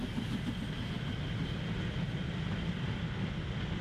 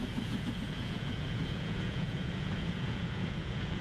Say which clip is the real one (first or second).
first